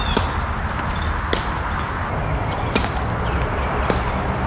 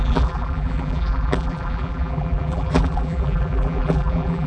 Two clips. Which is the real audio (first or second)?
first